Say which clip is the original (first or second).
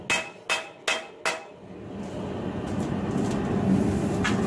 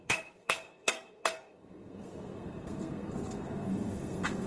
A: first